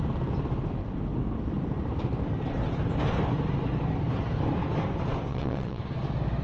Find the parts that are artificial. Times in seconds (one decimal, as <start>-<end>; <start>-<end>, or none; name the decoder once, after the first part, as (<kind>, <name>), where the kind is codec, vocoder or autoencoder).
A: 5.3-5.8 (vocoder, WaveNeXt)